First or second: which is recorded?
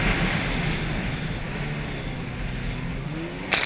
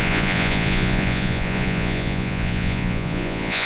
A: first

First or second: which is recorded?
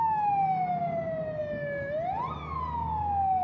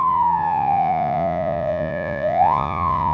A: first